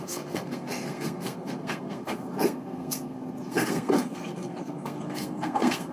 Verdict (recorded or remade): remade